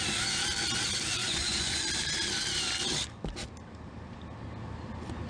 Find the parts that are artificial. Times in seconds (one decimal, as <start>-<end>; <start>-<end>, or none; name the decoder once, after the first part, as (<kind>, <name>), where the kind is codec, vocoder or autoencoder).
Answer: 1.2-1.8 (vocoder, Vocos)